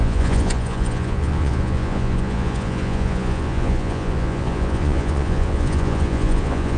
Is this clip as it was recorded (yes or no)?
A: no